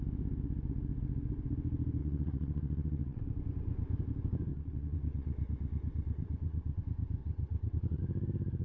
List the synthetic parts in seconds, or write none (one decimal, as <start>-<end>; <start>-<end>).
2.0-3.2; 4.5-6.8; 7.2-8.0